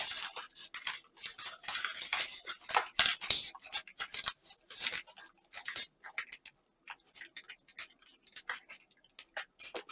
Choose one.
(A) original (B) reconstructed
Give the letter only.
A